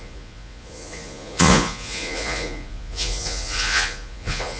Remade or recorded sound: remade